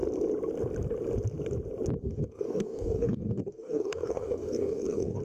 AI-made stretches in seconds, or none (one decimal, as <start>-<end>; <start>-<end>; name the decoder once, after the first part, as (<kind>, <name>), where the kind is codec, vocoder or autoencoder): 2.0-5.2 (codec, DAC)

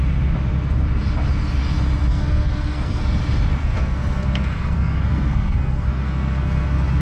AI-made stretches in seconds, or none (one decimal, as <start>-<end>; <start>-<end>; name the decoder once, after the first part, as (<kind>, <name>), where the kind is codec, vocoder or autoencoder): 2.1-3.0 (codec, SNAC); 3.6-7.0